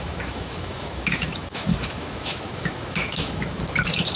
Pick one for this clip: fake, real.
fake